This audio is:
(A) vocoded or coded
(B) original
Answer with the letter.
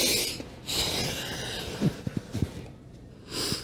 A